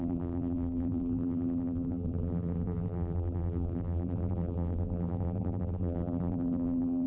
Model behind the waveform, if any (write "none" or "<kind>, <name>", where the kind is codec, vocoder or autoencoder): vocoder, BigVGAN v2